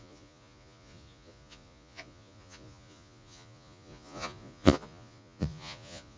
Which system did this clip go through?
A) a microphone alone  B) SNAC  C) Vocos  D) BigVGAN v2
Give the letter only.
C